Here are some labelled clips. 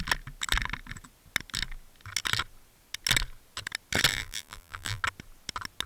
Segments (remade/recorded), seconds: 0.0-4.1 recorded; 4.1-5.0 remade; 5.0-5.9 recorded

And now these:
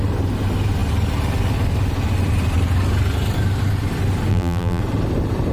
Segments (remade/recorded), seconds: 0.0-4.3 recorded; 4.3-4.8 remade; 4.8-5.5 recorded